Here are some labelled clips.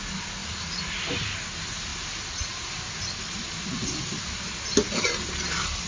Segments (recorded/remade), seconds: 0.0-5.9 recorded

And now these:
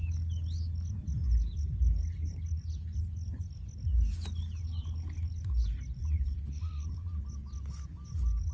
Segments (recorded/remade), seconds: 0.0-6.0 recorded; 6.0-7.2 remade; 7.2-8.5 recorded

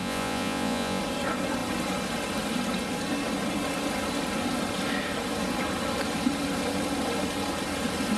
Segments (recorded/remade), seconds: 0.0-1.0 remade; 1.0-8.2 recorded

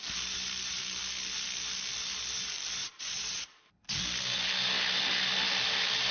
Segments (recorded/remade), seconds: 0.0-2.8 recorded; 2.8-3.6 remade; 3.6-6.1 recorded

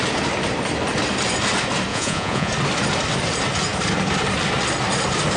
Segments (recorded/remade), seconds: 0.0-1.9 recorded; 1.9-2.5 remade; 2.5-5.4 recorded

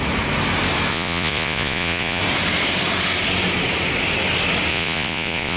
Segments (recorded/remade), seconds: 0.0-0.9 recorded; 0.9-2.2 remade; 2.2-4.7 recorded; 4.7-5.6 remade